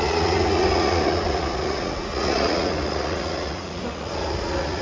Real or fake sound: fake